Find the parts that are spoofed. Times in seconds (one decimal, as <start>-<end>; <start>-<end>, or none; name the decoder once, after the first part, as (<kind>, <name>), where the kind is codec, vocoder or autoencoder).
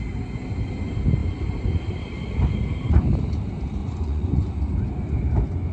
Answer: 3.8-4.5 (vocoder, Vocos)